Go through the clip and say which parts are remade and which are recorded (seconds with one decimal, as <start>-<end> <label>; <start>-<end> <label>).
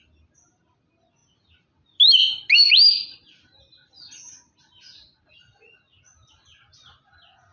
0.0-7.5 recorded